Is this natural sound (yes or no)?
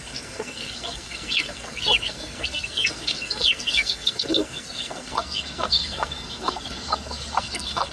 no